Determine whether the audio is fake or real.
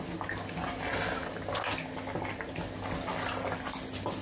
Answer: real